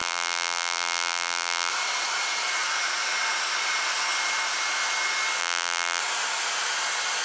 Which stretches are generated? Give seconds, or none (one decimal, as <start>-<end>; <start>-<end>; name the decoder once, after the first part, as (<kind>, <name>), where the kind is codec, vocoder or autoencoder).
0.0-1.7 (vocoder, BigVGAN v2); 5.4-6.0